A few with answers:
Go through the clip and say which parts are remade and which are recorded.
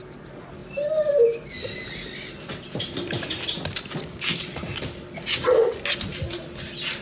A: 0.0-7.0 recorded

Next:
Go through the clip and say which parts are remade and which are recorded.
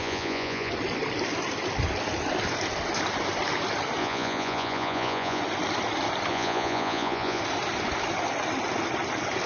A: 0.0-0.7 remade; 0.7-4.0 recorded; 4.0-5.4 remade; 5.4-6.3 recorded; 6.3-7.4 remade; 7.4-9.5 recorded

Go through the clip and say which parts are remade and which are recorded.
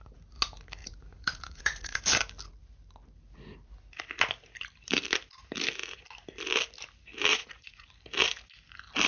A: 0.0-0.8 recorded; 0.8-2.0 remade; 2.0-7.3 recorded; 7.3-7.9 remade; 7.9-9.1 recorded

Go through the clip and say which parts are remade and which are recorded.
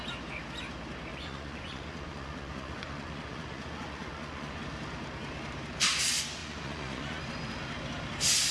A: 0.0-1.1 recorded; 1.1-4.6 remade; 4.6-6.4 recorded; 6.4-7.2 remade; 7.2-8.5 recorded